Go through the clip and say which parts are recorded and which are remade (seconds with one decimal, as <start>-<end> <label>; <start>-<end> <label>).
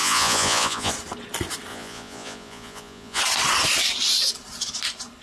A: 0.0-0.9 remade; 0.9-1.7 recorded; 1.7-3.2 remade; 3.2-5.2 recorded